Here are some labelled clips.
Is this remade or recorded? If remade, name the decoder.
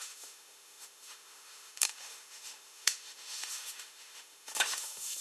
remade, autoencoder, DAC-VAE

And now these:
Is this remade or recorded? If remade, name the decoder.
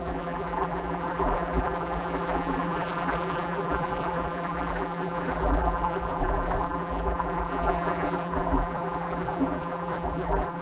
remade, vocoder, BigVGAN v2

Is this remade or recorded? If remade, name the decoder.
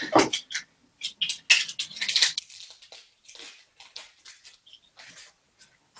recorded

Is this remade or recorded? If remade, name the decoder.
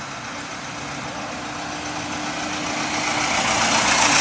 recorded